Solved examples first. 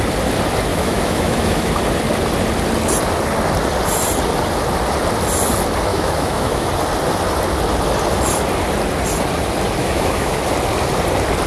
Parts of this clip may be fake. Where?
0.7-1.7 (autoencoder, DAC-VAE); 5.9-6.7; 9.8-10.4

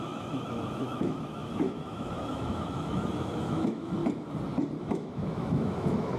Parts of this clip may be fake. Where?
0.0-4.0 (autoencoder, DAC-VAE); 4.8-6.2

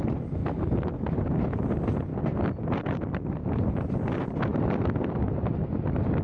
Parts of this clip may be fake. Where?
0.4-1.4 (vocoder, BigVGAN v2); 2.1-2.6; 4.5-5.3

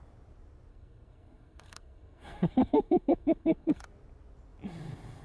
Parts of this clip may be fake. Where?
0.7-3.8 (codec, SNAC)

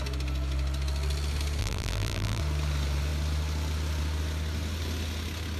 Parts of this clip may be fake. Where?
1.6-2.4 (vocoder, BigVGAN v2)

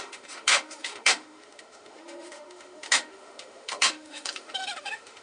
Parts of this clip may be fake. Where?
0.0-5.2 (autoencoder, DAC-VAE)

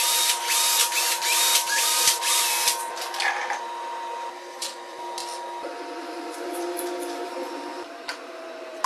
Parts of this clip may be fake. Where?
0.0-5.2 (vocoder, BigVGAN v2); 6.0-8.9